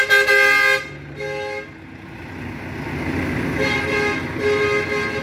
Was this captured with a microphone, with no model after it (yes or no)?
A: yes